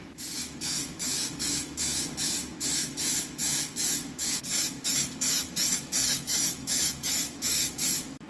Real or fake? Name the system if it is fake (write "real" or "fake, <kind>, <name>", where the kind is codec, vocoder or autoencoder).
fake, autoencoder, DAC-VAE